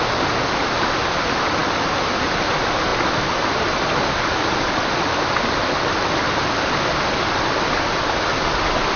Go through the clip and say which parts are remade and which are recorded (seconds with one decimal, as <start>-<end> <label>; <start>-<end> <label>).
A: 0.0-9.0 recorded